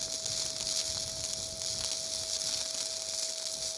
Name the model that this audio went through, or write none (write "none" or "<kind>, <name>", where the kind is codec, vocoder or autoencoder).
none